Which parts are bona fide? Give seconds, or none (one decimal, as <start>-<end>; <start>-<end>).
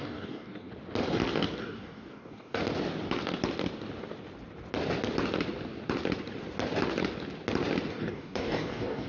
0.7-1.6; 2.6-7.9